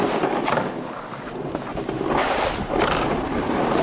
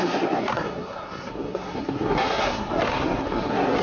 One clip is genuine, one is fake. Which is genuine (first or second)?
first